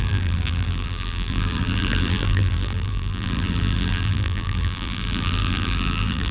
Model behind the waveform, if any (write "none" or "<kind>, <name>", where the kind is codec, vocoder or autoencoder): vocoder, BigVGAN v2